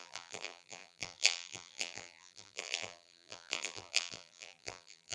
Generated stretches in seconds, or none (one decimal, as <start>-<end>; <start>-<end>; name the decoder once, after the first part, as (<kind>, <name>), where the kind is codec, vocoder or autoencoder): 0.0-5.1 (vocoder, BigVGAN v2)